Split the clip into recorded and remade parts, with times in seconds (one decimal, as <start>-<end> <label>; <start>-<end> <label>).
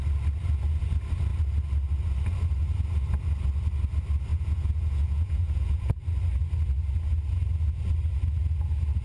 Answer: 0.0-4.3 recorded; 4.3-6.0 remade; 6.0-9.0 recorded